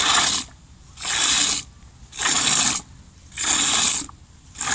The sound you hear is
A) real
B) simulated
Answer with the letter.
A